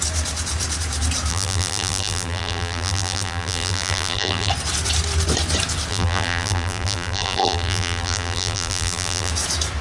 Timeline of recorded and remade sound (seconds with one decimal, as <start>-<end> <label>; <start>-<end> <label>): 0.0-1.3 recorded; 1.3-4.5 remade; 4.5-5.9 recorded; 5.9-9.3 remade; 9.3-9.8 recorded